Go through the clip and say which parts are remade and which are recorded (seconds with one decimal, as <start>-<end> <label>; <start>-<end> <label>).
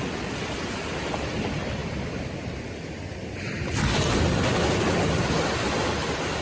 0.0-6.4 recorded